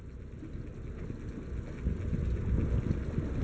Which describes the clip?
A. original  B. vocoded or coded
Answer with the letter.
A